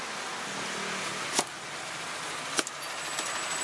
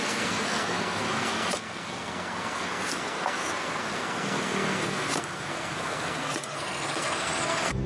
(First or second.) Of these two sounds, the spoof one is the second